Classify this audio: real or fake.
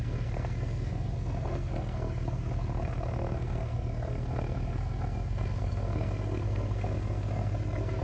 fake